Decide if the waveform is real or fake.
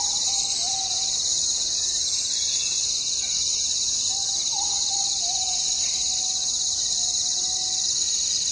real